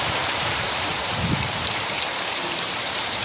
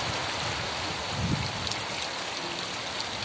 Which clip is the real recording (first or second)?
second